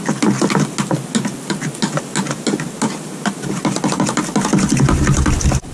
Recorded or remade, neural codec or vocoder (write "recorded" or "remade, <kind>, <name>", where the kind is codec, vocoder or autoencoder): recorded